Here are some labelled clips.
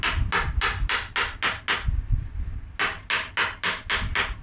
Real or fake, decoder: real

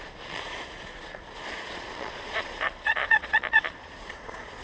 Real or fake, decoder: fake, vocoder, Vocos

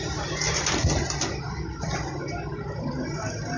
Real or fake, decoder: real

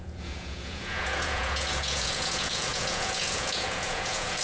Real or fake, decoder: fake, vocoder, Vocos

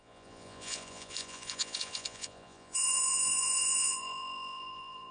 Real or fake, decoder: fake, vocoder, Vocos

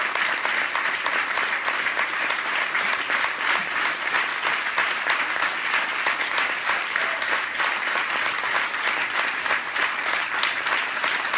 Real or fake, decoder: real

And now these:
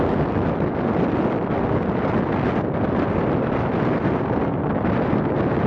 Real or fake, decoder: real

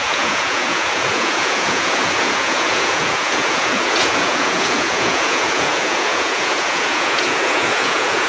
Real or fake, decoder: fake, vocoder, Vocos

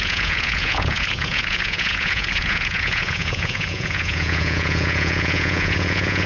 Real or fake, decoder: fake, vocoder, Vocos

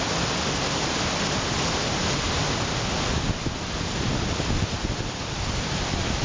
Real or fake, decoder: real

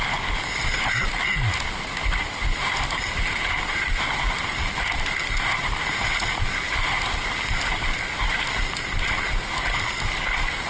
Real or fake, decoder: real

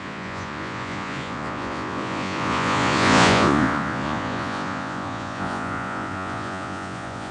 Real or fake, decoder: fake, vocoder, Vocos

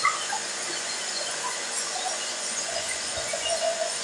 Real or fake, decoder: fake, vocoder, Vocos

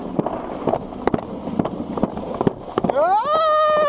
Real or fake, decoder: real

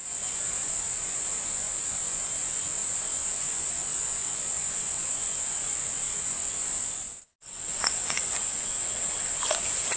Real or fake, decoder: fake, vocoder, Vocos